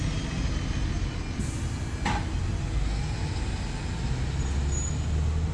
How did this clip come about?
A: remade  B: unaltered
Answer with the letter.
B